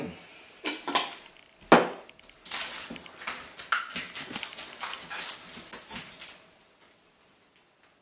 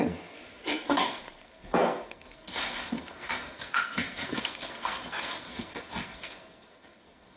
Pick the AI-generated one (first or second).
second